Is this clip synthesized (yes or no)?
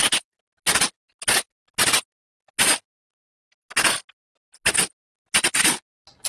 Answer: no